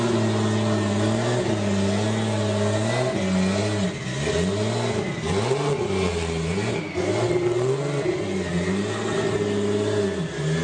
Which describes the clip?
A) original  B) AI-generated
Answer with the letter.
A